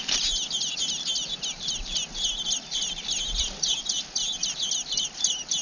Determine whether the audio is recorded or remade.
recorded